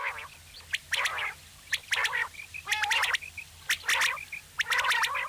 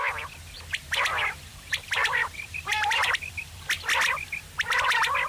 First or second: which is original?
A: first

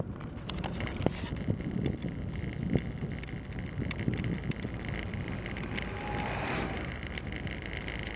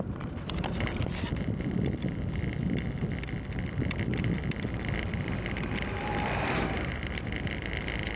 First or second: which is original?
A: first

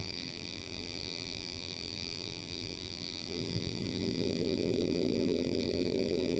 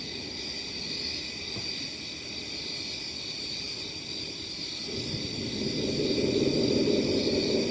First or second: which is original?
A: second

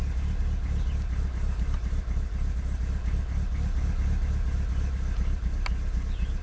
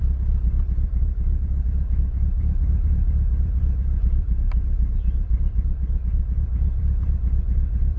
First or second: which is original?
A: first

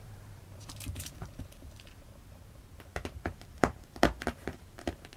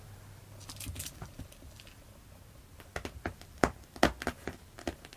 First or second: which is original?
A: second